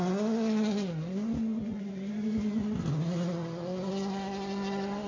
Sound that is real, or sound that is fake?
real